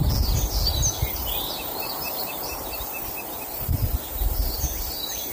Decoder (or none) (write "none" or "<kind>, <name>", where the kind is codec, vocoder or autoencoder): none